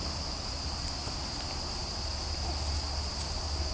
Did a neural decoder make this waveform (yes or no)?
no